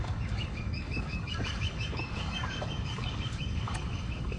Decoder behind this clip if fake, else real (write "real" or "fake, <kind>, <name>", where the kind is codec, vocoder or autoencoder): fake, codec, DAC